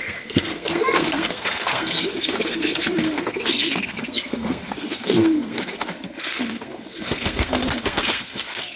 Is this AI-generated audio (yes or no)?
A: yes